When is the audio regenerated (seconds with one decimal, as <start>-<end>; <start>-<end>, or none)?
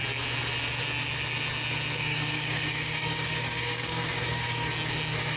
2.0-4.7